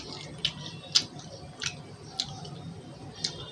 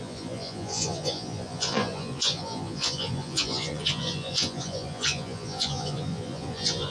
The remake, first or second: second